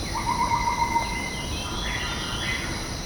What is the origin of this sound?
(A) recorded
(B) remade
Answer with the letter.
A